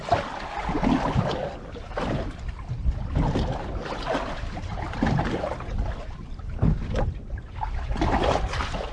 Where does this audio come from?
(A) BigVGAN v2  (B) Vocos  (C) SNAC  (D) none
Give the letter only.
D